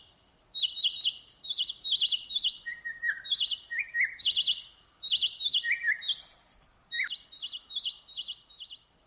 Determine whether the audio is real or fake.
real